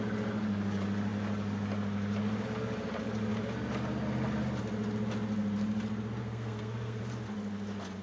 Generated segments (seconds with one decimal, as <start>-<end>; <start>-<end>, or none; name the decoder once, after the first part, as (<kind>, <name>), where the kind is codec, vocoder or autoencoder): 6.2-7.0 (codec, SNAC)